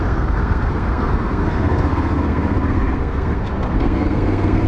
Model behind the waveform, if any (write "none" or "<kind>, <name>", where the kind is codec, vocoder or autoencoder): codec, SNAC